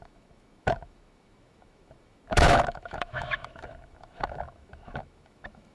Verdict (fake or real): fake